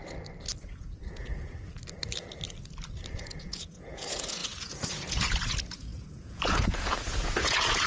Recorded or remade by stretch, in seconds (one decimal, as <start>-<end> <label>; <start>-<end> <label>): 0.0-0.6 recorded; 0.6-1.7 remade; 1.7-3.1 recorded; 3.1-7.9 remade

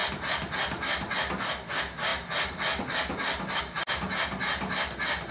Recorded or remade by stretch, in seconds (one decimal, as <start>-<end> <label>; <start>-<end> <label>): 0.0-5.3 recorded

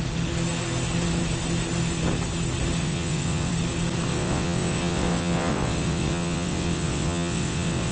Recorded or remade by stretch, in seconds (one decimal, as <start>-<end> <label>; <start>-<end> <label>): 0.0-2.8 recorded; 2.8-3.5 remade; 3.5-4.1 recorded; 4.1-7.9 remade

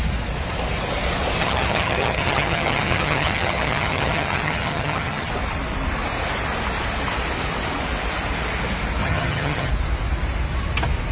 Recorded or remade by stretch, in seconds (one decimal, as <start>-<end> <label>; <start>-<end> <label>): 0.0-1.4 recorded; 1.4-5.3 remade; 5.3-9.0 recorded; 9.0-9.7 remade; 9.7-11.1 recorded

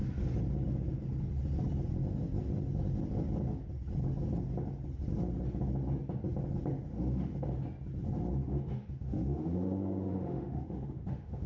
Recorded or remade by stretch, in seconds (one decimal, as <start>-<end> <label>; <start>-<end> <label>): 0.0-6.9 recorded; 6.9-7.6 remade; 7.6-8.4 recorded; 8.4-11.5 remade